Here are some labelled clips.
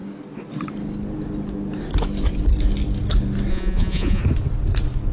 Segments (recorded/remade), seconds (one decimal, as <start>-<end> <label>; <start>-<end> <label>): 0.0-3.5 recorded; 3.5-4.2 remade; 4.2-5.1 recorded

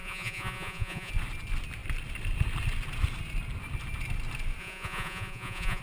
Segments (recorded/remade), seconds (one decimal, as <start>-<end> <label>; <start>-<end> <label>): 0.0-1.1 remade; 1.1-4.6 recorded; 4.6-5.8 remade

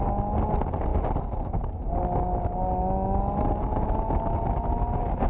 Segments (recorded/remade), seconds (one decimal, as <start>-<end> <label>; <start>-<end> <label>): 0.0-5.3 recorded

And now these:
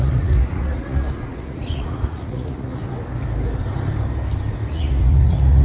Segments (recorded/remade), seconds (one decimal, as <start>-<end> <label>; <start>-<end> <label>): 0.0-2.8 remade; 2.8-4.7 recorded; 4.7-5.6 remade

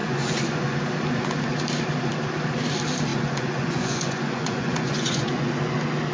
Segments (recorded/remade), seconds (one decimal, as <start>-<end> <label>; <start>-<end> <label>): 0.0-0.8 remade; 0.8-3.1 recorded; 3.1-5.5 remade; 5.5-6.1 recorded

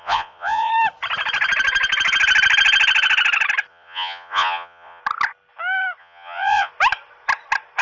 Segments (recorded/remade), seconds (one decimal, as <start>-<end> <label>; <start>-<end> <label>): 0.0-0.7 remade; 0.7-3.7 recorded; 3.7-5.0 remade; 5.0-6.0 recorded; 6.0-6.7 remade; 6.7-7.8 recorded

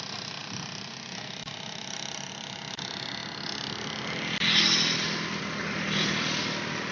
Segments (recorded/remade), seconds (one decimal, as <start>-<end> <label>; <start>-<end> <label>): 0.0-6.9 recorded

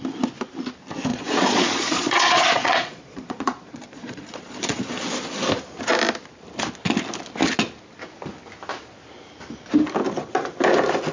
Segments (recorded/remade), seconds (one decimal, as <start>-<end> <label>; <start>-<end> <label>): 0.0-1.1 recorded; 1.1-4.8 remade; 4.8-11.1 recorded